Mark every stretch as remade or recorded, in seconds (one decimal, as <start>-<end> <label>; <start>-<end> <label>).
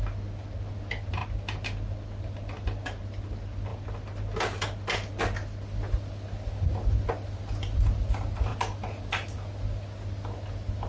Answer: 0.0-10.9 recorded